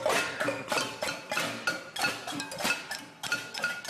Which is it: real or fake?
real